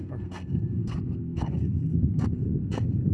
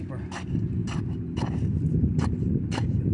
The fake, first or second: first